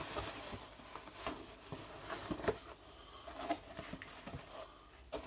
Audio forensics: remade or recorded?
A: recorded